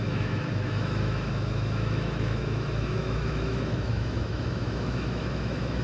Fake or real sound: fake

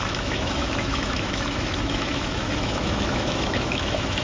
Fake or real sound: fake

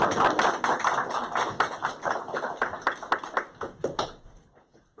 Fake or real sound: real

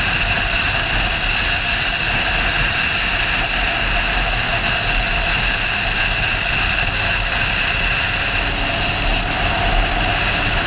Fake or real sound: real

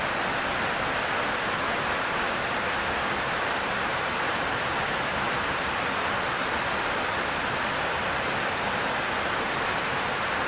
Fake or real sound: real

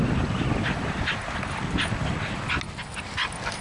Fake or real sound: real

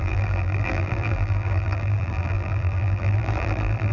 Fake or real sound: fake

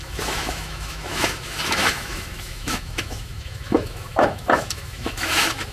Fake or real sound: fake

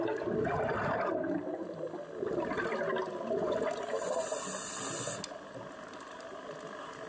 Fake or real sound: real